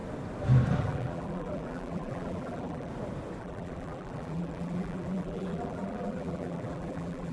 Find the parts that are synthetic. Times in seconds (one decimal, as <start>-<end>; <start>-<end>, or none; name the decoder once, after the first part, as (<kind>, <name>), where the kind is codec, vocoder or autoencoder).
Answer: 0.8-2.9 (vocoder, BigVGAN v2); 3.4-7.3